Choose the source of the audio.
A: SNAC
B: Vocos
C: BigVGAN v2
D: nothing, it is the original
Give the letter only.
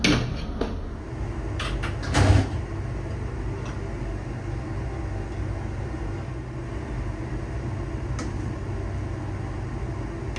D